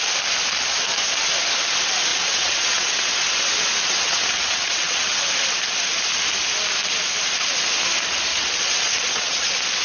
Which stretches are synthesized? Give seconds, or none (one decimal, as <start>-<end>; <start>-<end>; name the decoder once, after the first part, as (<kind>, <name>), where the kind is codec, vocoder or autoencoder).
2.1-3.1 (vocoder, WaveNeXt); 3.8-5.2; 8.3-9.8